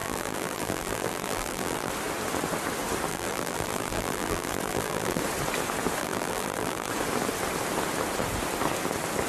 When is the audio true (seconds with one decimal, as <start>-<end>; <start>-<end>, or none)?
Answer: 1.9-3.1; 5.2-6.0; 6.9-9.3